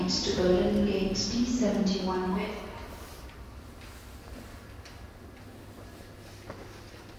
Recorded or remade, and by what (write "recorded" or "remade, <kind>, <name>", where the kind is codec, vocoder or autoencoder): recorded